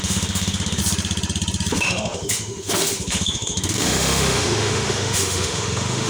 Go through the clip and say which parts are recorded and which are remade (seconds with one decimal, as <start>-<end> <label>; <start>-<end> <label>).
0.0-0.8 remade; 0.8-1.7 recorded; 1.7-6.1 remade